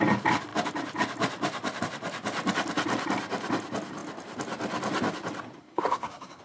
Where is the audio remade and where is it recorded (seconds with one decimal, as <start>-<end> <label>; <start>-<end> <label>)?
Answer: 0.0-5.6 recorded; 5.6-6.4 remade